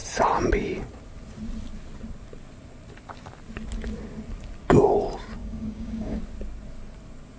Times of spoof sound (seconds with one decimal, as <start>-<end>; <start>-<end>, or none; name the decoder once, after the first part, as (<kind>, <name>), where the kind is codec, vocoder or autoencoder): 5.4-6.2 (codec, DAC)